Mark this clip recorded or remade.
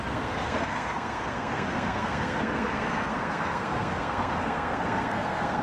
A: remade